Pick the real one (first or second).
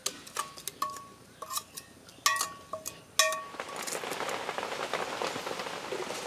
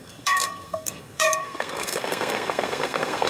first